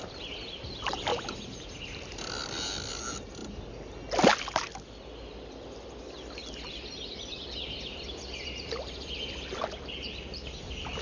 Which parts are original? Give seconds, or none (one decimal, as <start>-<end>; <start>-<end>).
0.0-6.4

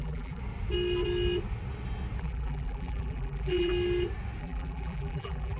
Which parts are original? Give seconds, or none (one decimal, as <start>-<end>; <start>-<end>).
0.4-2.2; 3.7-4.4